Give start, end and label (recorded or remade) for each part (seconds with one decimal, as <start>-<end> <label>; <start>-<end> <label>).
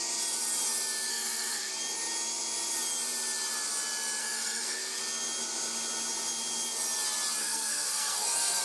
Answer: 0.0-1.1 recorded; 1.1-1.7 remade; 1.7-4.2 recorded; 4.2-5.0 remade; 5.0-7.4 recorded; 7.4-8.6 remade